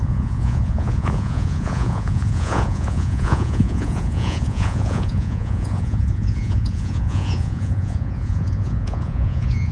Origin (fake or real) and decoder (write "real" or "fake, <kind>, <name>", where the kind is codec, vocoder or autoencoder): fake, vocoder, Vocos